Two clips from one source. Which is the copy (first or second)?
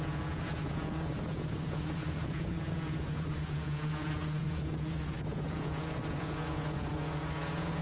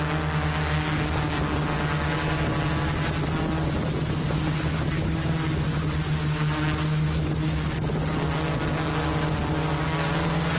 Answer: first